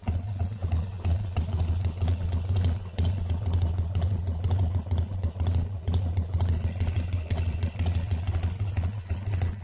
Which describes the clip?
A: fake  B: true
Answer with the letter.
A